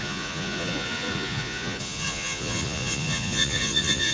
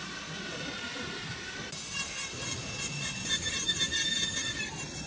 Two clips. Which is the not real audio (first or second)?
first